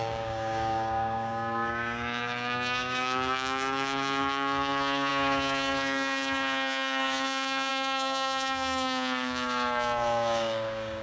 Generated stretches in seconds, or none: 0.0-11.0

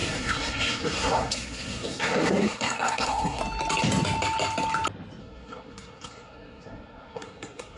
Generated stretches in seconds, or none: 0.0-3.4; 5.2-7.8